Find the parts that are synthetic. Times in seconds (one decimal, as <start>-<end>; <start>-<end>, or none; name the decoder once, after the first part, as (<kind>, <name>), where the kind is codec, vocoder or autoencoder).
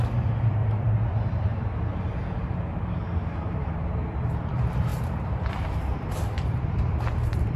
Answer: 0.0-7.6 (vocoder, BigVGAN v2)